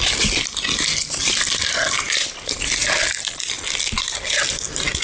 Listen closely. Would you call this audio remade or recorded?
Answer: recorded